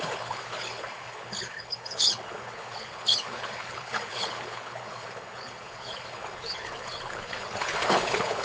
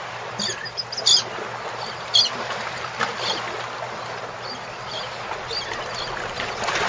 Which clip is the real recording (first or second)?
second